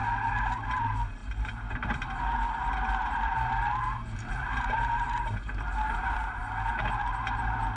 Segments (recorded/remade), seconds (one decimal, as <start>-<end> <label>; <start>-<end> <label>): 0.0-0.5 recorded; 0.5-6.4 remade; 6.4-7.0 recorded; 7.0-7.8 remade